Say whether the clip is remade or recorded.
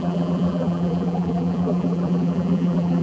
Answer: remade